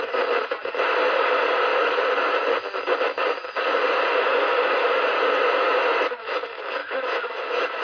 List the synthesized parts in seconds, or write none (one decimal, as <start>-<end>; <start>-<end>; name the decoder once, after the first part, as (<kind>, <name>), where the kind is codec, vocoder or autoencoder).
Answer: 6.8-7.8 (autoencoder, DAC-VAE)